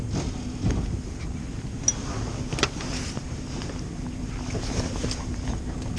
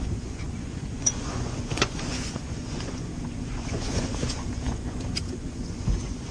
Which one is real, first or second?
first